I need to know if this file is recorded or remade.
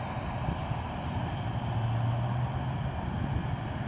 recorded